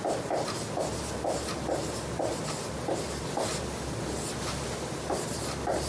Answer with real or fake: real